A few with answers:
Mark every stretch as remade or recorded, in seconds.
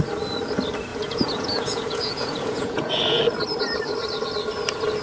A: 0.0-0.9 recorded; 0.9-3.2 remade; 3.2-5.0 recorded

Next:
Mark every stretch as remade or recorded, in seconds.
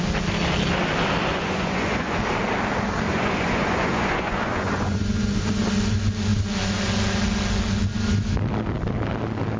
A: 0.0-1.3 recorded; 1.3-2.2 remade; 2.2-3.1 recorded; 3.1-5.0 remade; 5.0-9.6 recorded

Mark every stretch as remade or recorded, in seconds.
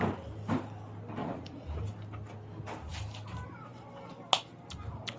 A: 0.0-1.2 recorded; 1.2-1.7 remade; 1.7-5.2 recorded